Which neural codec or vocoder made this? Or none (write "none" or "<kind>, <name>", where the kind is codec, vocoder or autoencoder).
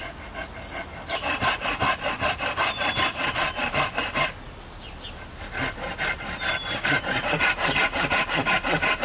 none